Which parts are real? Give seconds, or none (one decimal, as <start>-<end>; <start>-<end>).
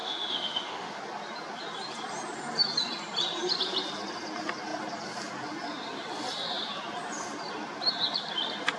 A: 1.0-8.8